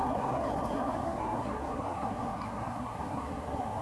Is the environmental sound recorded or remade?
remade